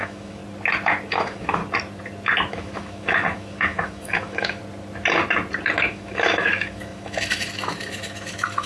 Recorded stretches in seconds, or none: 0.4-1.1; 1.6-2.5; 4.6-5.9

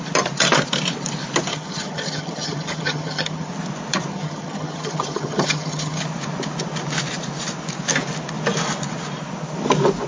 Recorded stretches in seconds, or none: 0.0-1.5; 3.5-4.1; 6.0-10.1

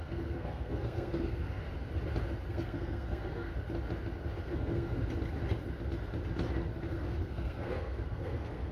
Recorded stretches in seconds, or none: 1.6-2.5; 3.5-4.4; 5.0-6.8